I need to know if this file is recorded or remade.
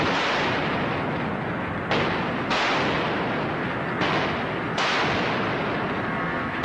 recorded